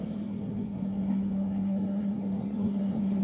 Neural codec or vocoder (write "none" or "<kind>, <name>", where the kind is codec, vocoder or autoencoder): codec, SNAC